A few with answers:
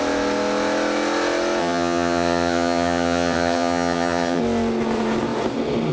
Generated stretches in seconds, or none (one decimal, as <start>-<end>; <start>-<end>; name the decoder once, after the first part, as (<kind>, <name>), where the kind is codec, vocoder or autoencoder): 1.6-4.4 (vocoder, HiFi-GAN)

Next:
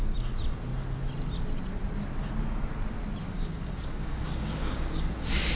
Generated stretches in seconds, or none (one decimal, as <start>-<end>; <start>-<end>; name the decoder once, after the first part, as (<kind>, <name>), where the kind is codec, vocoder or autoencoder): 3.2-5.6 (codec, DAC)

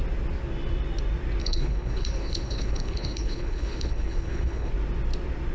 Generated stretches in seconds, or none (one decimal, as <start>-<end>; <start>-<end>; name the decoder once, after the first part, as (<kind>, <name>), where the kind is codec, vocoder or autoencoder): 1.4-4.7 (codec, HILCodec)

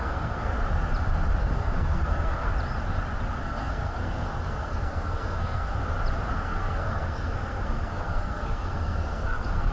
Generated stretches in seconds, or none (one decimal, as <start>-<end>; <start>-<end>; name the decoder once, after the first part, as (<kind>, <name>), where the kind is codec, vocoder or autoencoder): 0.0-0.5 (codec, SNAC); 1.4-2.5; 3.4-5.8; 6.3-9.7

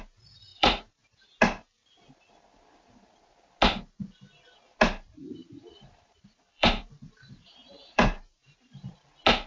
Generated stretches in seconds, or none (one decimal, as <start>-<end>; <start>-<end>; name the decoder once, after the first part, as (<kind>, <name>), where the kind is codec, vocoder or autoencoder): 0.5-1.3 (vocoder, BigVGAN v2); 5.4-8.9